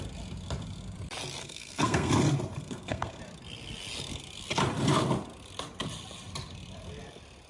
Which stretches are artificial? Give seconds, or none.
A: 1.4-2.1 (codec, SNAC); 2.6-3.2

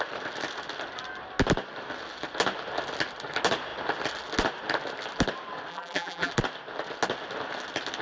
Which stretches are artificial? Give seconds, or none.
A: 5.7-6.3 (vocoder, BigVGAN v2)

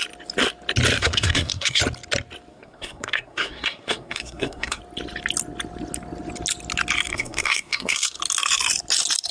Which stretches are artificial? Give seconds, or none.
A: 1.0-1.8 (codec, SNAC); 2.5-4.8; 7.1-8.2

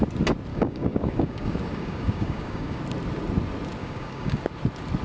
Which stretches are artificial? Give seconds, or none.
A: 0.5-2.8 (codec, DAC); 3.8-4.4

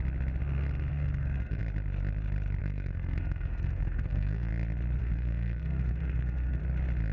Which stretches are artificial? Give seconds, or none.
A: 0.9-1.6 (codec, SNAC); 2.6-4.5; 5.0-6.6